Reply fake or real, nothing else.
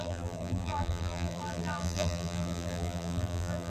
fake